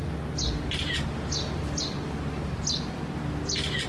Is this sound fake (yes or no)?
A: no